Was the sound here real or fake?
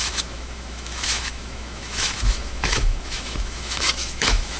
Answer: fake